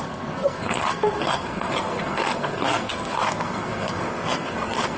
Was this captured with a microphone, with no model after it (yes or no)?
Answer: no